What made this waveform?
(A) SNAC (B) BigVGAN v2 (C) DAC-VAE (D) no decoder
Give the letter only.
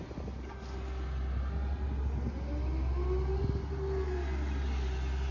D